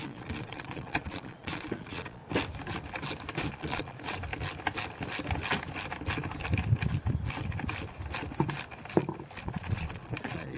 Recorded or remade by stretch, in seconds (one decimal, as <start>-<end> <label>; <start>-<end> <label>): 0.0-2.2 remade; 2.2-3.5 recorded; 3.5-4.3 remade; 4.3-9.4 recorded; 9.4-10.6 remade